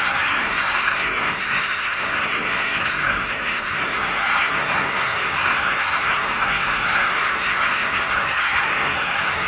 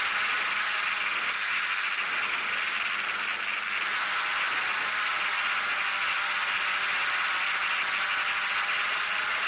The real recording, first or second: second